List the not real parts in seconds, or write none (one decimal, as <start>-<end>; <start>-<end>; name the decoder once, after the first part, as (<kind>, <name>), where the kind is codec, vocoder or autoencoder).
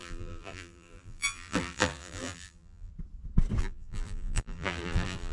0.0-2.9 (vocoder, BigVGAN v2); 3.6-5.3